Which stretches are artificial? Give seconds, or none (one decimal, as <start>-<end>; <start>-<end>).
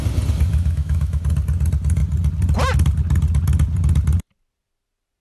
0.5-1.2